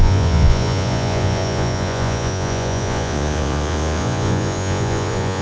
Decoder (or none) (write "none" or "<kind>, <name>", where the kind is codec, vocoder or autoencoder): vocoder, Vocos